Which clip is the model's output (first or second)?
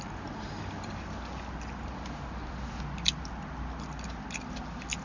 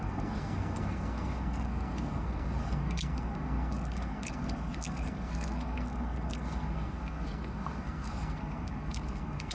second